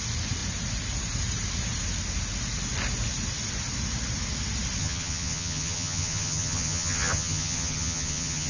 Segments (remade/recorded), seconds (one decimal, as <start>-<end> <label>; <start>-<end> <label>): 0.0-4.8 recorded; 4.8-8.5 remade